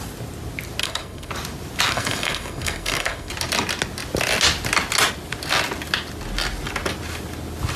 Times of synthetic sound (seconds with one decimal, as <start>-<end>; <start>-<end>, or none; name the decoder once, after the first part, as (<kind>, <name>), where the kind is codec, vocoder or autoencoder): 0.8-1.3 (codec, SNAC); 1.9-3.3